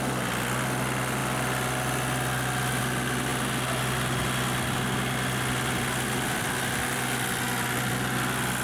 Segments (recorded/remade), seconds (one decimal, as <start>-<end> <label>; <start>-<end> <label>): 0.0-8.6 recorded